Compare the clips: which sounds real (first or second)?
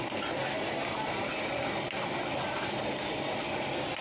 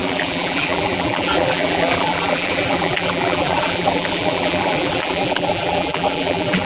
first